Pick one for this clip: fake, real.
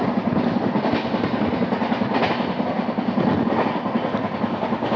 real